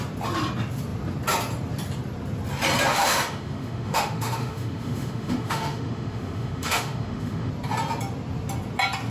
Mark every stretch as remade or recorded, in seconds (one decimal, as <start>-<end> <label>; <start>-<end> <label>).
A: 0.0-2.9 recorded; 2.9-7.5 remade; 7.5-9.1 recorded